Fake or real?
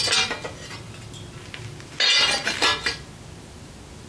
real